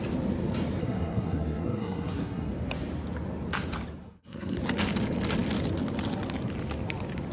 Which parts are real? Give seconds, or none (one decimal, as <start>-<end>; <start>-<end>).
0.0-0.8; 2.5-4.0; 4.6-7.3